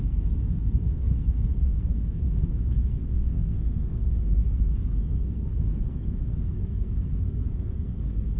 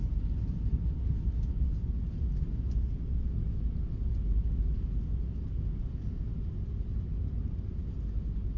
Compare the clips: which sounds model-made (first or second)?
first